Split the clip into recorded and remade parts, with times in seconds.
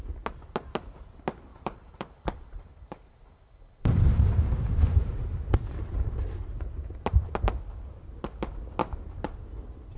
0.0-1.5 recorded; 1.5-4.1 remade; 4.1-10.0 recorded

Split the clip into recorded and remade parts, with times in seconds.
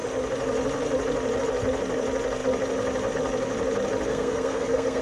0.0-4.1 recorded; 4.1-5.0 remade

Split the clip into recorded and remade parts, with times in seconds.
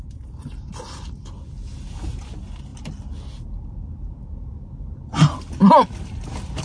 0.0-6.6 recorded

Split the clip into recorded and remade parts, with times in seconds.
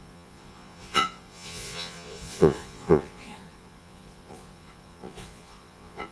0.0-6.1 remade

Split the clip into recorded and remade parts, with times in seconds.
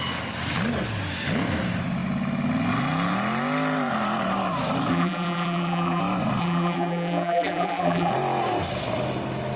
0.0-4.9 recorded; 4.9-6.0 remade; 6.0-6.4 recorded; 6.4-8.1 remade; 8.1-9.6 recorded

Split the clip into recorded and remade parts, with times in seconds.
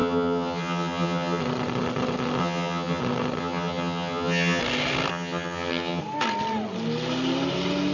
0.0-1.4 remade; 1.4-2.4 recorded; 2.4-3.0 remade; 3.0-3.4 recorded; 3.4-4.6 remade; 4.6-5.1 recorded; 5.1-6.0 remade; 6.0-7.9 recorded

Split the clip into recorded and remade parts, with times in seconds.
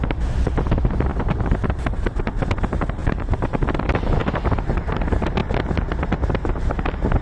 0.0-1.1 recorded; 1.1-2.2 remade; 2.2-3.0 recorded; 3.0-3.5 remade; 3.5-7.2 recorded